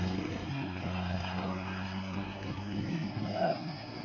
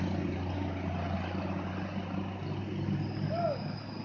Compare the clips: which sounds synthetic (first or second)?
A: first